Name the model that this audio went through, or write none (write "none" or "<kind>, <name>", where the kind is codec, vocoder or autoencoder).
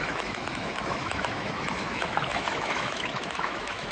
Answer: autoencoder, DAC-VAE